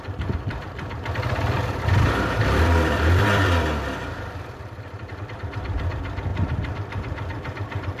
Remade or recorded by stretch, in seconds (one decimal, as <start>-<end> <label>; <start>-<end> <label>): 0.0-8.0 remade